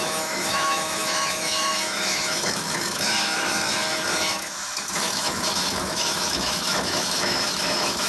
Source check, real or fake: fake